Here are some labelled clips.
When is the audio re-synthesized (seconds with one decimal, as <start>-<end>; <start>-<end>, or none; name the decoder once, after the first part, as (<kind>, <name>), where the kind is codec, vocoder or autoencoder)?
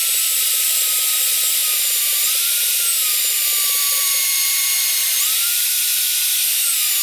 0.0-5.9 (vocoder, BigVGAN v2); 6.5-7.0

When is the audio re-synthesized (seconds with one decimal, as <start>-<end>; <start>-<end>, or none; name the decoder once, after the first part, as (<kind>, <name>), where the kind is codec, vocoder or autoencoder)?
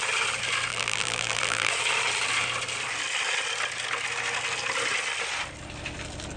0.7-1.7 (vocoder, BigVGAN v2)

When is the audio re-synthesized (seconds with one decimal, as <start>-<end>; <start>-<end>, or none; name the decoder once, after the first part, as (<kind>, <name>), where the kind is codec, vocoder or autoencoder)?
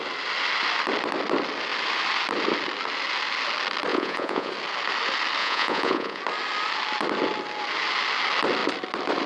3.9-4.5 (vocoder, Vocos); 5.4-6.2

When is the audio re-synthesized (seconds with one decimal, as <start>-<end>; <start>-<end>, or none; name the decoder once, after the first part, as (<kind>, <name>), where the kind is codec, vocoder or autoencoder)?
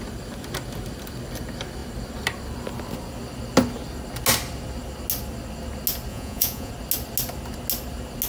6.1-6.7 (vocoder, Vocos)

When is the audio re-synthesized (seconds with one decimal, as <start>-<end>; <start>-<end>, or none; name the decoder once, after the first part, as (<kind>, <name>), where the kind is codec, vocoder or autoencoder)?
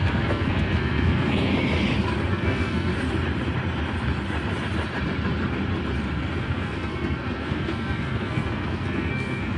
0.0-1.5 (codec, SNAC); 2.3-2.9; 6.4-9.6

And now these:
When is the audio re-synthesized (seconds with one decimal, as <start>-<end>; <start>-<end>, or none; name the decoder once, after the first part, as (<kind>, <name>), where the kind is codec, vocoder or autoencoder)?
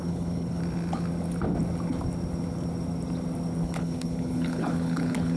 0.0-0.6 (codec, HILCodec); 3.6-5.4